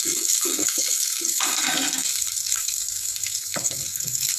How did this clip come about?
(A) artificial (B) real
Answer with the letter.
A